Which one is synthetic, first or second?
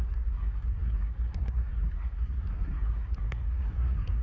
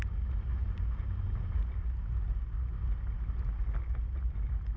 first